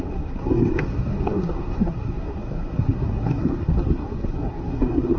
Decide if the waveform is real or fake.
fake